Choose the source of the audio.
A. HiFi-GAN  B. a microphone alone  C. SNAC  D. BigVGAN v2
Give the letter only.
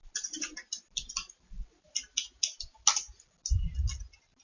B